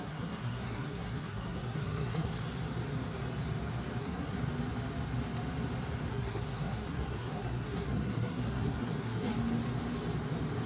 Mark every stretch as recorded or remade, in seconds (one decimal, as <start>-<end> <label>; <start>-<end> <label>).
0.0-2.3 remade; 2.3-4.0 recorded; 4.0-4.4 remade; 4.4-6.1 recorded; 6.1-9.3 remade; 9.3-10.7 recorded